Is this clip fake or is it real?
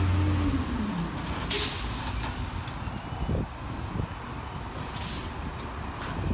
real